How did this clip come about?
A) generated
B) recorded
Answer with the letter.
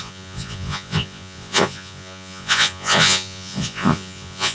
A